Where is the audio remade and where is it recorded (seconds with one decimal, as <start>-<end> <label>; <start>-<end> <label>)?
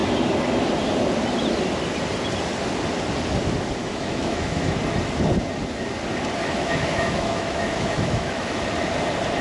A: 0.0-3.8 recorded; 3.8-4.8 remade; 4.8-6.4 recorded; 6.4-8.6 remade; 8.6-9.4 recorded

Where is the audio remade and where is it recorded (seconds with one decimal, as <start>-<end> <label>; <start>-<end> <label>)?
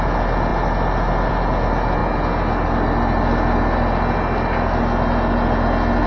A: 0.0-6.1 recorded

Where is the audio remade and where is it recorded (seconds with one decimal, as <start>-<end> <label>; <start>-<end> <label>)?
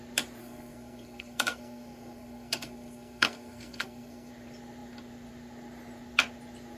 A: 0.0-0.4 recorded; 0.4-4.3 remade; 4.3-6.8 recorded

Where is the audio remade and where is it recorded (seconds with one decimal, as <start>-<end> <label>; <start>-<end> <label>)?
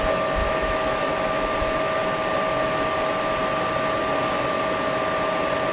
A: 0.0-0.4 recorded; 0.4-1.0 remade; 1.0-5.7 recorded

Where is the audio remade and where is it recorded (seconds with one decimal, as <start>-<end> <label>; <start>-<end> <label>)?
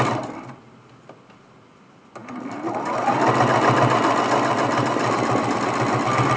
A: 0.0-6.4 recorded